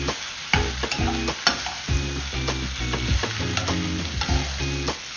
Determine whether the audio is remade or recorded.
recorded